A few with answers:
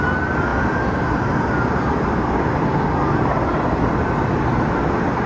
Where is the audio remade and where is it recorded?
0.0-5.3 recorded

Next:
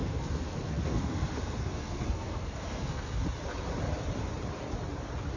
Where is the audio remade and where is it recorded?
0.0-3.2 remade; 3.2-5.4 recorded

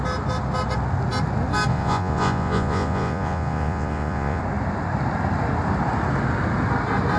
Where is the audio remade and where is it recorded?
0.0-1.7 recorded; 1.7-4.4 remade; 4.4-7.2 recorded